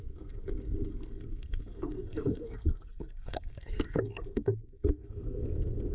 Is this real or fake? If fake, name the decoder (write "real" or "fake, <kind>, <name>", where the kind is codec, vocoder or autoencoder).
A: fake, codec, SNAC